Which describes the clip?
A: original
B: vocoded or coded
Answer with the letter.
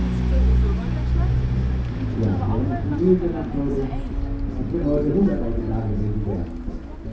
A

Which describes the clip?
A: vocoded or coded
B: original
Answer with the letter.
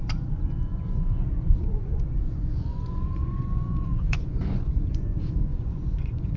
A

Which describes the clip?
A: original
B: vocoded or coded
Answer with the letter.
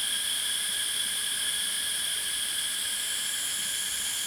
B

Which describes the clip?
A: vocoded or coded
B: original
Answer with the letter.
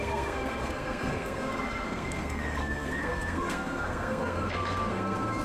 A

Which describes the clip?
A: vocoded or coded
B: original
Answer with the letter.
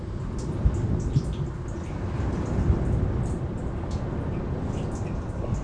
B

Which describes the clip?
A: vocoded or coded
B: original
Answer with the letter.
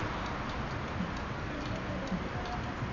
B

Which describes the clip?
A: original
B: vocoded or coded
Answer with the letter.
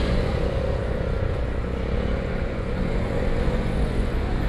B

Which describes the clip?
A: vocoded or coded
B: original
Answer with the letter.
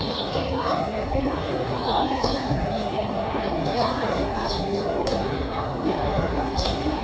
A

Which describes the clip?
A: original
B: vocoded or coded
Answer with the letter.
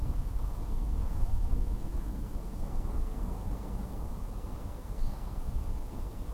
B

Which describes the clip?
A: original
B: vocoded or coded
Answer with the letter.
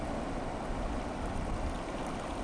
A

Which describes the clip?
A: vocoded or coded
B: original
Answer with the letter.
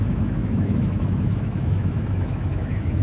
A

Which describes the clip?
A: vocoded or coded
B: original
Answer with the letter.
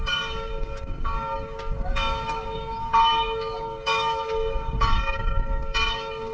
A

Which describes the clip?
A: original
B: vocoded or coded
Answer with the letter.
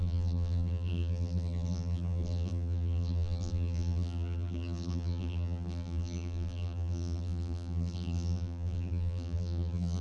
B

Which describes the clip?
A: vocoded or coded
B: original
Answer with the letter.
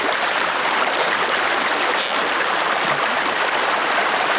B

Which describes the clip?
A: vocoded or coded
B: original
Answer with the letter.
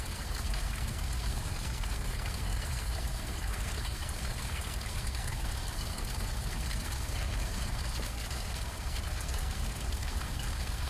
A